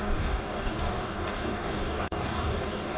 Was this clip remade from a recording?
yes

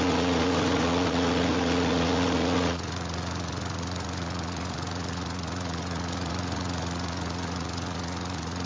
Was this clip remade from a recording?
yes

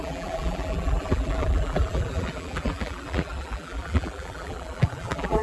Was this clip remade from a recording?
yes